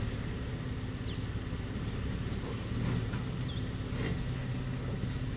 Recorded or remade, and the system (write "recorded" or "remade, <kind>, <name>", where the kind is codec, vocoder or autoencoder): recorded